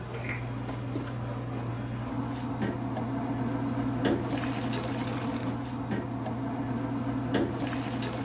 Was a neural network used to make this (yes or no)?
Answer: no